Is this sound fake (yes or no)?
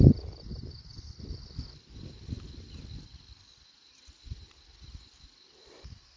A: no